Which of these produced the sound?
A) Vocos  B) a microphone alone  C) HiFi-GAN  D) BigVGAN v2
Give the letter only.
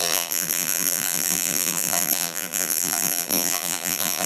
D